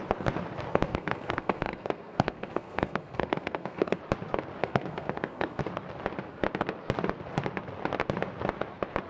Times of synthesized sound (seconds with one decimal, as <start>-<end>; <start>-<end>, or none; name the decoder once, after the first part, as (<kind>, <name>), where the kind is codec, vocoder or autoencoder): 0.7-4.0 (codec, SNAC); 4.6-5.6